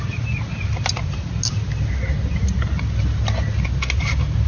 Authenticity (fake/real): real